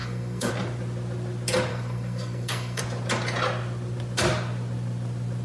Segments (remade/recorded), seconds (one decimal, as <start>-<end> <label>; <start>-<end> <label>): 0.0-0.5 remade; 0.5-1.7 recorded; 1.7-2.8 remade; 2.8-5.4 recorded